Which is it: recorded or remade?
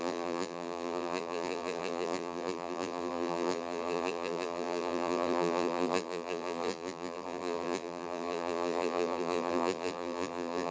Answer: remade